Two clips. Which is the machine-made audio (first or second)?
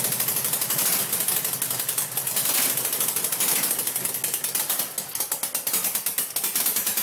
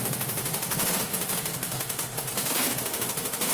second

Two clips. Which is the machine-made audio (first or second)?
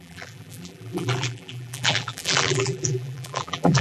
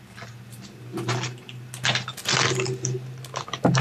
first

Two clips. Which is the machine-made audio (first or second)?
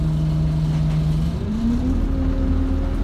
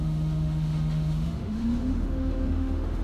second